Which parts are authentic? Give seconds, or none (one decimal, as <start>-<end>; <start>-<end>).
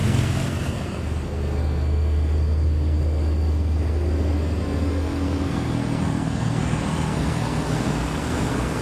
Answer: none